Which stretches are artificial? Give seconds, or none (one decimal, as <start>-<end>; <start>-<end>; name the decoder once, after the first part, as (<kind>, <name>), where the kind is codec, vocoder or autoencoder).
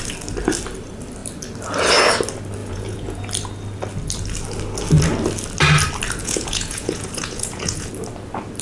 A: 2.6-3.2 (vocoder, Vocos); 6.2-7.9